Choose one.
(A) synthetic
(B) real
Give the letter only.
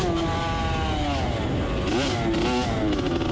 B